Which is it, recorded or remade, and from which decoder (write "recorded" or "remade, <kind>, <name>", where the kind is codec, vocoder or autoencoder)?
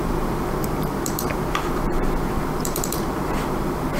remade, vocoder, BigVGAN v2